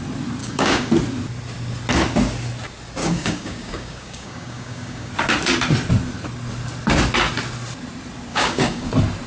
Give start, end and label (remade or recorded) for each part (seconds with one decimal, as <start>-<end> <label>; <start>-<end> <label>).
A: 0.0-0.4 recorded; 0.4-0.9 remade; 0.9-3.0 recorded; 3.0-5.1 remade; 5.1-8.3 recorded; 8.3-8.9 remade; 8.9-9.3 recorded